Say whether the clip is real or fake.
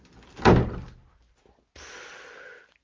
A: real